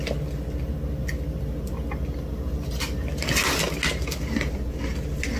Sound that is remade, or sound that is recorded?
recorded